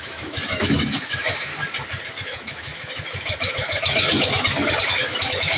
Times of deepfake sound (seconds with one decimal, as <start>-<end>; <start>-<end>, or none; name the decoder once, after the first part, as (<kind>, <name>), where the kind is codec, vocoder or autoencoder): 0.0-1.5 (autoencoder, DAC-VAE); 2.1-5.6